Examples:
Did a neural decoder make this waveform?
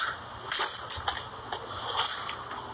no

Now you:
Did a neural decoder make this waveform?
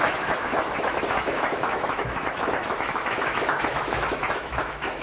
yes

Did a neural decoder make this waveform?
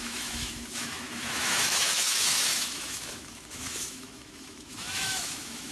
yes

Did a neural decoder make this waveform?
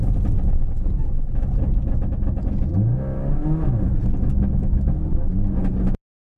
no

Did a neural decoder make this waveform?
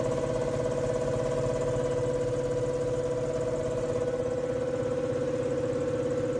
no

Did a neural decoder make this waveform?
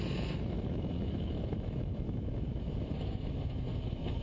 yes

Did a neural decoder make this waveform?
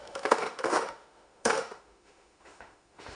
yes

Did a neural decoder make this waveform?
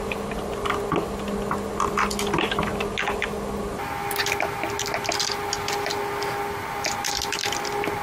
no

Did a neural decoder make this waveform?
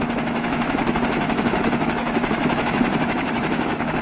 yes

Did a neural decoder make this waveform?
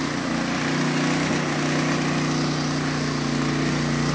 no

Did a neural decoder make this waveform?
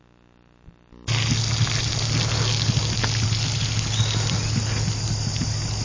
no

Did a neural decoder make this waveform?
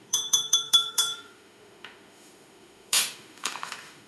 yes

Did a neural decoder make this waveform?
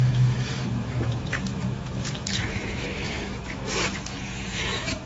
yes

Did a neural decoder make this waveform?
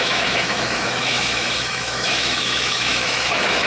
yes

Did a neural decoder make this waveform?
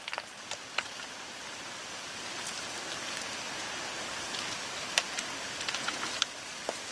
no